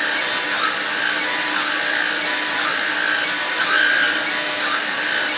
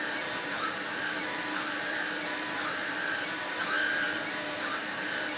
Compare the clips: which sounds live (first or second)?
first